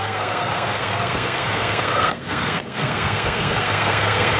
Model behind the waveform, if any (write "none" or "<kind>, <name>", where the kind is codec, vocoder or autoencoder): codec, SNAC